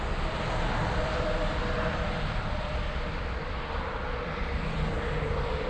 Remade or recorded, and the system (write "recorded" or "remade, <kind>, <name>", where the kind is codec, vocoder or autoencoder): recorded